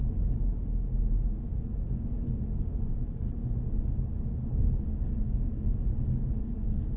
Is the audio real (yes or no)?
yes